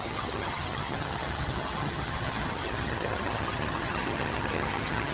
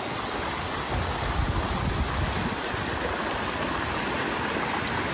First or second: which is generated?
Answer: first